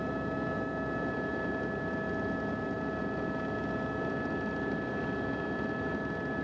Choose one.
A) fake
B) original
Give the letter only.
B